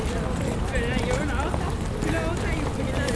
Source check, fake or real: real